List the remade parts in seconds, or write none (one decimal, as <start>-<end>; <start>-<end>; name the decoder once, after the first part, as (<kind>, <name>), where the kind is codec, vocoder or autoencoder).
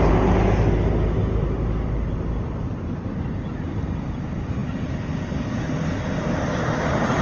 none